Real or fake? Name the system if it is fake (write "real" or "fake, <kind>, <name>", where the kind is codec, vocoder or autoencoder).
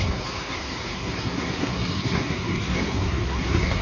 fake, codec, SNAC